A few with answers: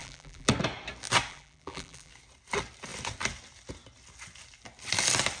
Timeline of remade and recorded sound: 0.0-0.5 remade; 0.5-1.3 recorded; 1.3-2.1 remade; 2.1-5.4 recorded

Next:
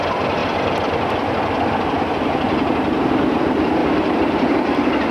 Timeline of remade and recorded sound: 0.0-3.8 recorded; 3.8-5.1 remade

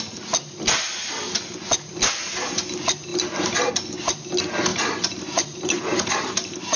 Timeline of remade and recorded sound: 0.0-3.1 recorded; 3.1-3.7 remade; 3.7-4.7 recorded; 4.7-6.8 remade